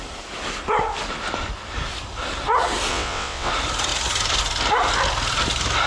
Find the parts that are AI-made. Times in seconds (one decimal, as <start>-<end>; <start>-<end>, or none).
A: 2.9-3.5